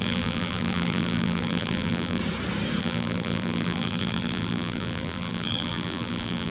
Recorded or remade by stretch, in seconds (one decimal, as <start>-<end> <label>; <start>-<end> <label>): 0.0-2.2 remade; 2.2-2.8 recorded; 2.8-6.5 remade